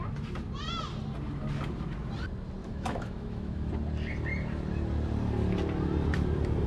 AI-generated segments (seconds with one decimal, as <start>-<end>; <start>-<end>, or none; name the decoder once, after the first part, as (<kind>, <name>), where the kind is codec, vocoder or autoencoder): 2.6-3.7 (autoencoder, DAC-VAE)